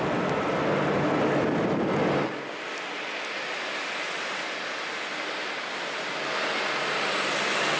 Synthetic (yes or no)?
no